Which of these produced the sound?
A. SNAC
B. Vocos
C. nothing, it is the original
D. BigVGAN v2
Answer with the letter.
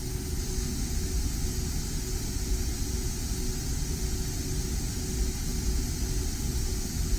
C